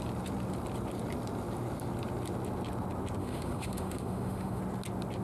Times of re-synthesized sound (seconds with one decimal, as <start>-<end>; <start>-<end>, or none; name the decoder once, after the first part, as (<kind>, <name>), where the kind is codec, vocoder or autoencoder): 3.2-4.6 (autoencoder, DAC-VAE)